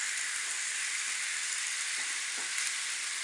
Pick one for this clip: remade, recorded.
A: recorded